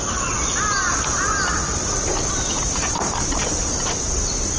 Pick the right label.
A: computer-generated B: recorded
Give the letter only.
B